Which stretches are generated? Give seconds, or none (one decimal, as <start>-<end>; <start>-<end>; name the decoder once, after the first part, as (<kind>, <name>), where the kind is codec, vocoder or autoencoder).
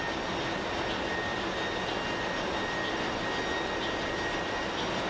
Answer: none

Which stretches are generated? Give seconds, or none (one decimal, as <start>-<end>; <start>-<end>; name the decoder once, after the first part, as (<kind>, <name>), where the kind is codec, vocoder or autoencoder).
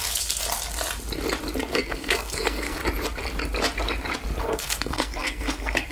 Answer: 0.0-0.4 (codec, SNAC); 1.7-2.8; 4.4-5.9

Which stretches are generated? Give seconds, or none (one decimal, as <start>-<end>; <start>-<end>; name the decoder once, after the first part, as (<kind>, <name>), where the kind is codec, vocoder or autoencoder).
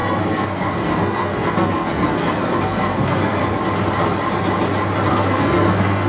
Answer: 0.0-3.4 (codec, SNAC); 5.1-6.1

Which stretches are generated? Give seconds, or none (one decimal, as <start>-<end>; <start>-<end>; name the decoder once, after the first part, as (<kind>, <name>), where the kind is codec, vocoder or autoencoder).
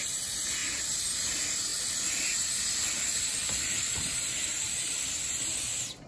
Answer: none